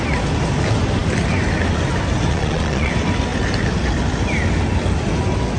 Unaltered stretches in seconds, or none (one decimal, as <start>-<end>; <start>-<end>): 0.0-2.3; 2.9-5.6